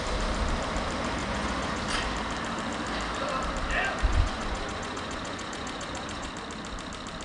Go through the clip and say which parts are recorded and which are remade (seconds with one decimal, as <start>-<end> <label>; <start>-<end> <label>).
0.0-1.2 recorded; 1.2-1.8 remade; 1.8-4.1 recorded; 4.1-6.3 remade; 6.3-7.2 recorded

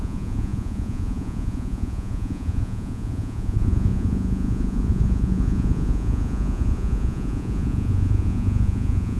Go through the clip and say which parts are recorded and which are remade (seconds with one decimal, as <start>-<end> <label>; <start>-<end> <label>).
0.0-9.2 remade

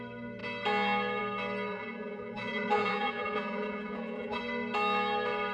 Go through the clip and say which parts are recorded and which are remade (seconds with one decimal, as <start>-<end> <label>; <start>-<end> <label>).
0.0-1.7 recorded; 1.7-4.4 remade; 4.4-5.5 recorded

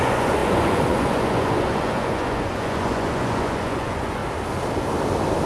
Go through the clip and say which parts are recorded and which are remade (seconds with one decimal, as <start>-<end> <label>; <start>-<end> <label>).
0.0-4.2 remade; 4.2-5.5 recorded

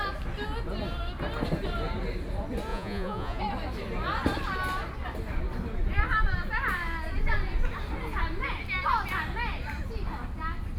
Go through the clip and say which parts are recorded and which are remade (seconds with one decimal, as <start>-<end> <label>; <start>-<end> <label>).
0.0-2.7 recorded; 2.7-3.4 remade; 3.4-10.8 recorded

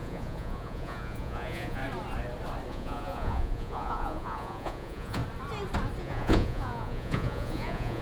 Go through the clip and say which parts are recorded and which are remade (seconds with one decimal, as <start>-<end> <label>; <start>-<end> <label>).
0.0-1.8 remade; 1.8-2.7 recorded; 2.7-5.2 remade; 5.2-6.0 recorded; 6.0-8.0 remade